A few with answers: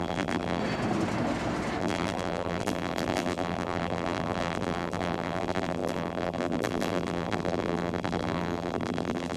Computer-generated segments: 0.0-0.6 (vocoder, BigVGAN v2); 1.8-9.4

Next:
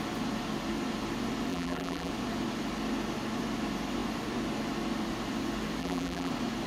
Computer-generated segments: 1.5-2.1 (vocoder, BigVGAN v2); 5.8-6.3

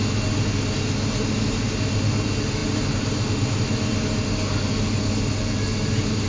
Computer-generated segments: none

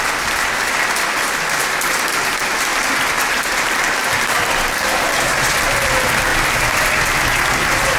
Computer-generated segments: 2.7-5.5 (vocoder, BigVGAN v2); 6.3-6.9

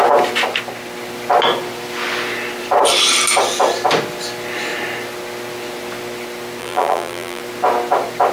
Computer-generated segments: 6.6-7.4 (vocoder, BigVGAN v2)

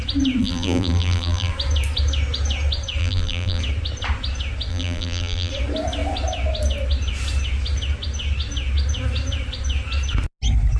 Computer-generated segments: 0.4-1.5 (vocoder, BigVGAN v2); 3.0-3.6; 4.7-5.5

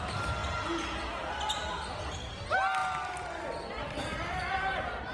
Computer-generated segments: none